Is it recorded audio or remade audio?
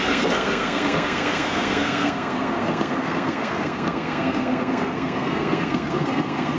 remade